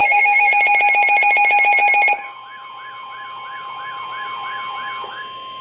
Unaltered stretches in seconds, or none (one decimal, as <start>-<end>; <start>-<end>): 0.5-5.6